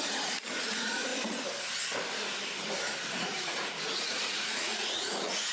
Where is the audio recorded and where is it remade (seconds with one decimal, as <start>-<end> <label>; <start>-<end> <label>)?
0.0-1.1 remade; 1.1-3.2 recorded; 3.2-5.5 remade